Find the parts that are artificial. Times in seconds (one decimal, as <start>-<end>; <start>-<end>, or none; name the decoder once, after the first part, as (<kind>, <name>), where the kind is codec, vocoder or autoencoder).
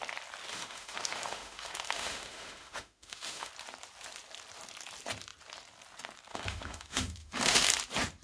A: 0.5-3.5 (autoencoder, DAC-VAE); 6.3-7.7